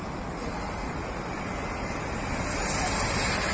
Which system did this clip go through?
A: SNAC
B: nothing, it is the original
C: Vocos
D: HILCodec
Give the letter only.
B